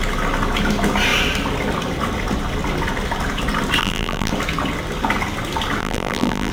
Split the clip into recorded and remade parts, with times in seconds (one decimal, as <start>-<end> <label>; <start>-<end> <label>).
0.0-3.8 recorded; 3.8-4.3 remade; 4.3-5.8 recorded; 5.8-6.5 remade